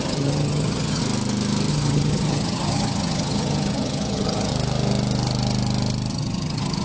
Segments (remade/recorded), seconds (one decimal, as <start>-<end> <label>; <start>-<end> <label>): 0.0-1.0 remade; 1.0-1.7 recorded; 1.7-4.5 remade; 4.5-6.1 recorded; 6.1-6.8 remade